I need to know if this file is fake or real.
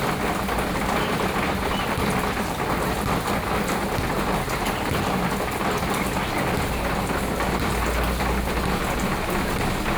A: real